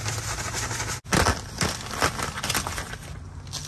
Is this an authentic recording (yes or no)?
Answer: yes